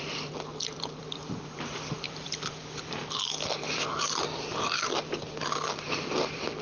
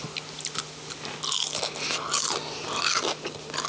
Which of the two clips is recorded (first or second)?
second